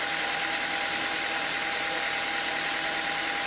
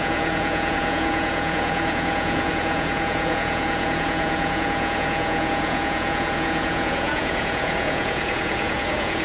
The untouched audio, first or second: first